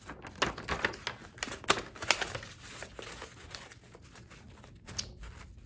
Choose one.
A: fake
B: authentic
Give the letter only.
B